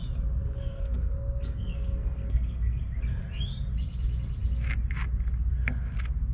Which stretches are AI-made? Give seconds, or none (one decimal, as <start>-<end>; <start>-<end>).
0.4-2.8